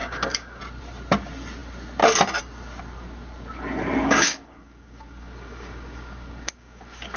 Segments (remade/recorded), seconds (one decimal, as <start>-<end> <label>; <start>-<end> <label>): 0.0-0.6 remade; 0.6-4.0 recorded; 4.0-7.2 remade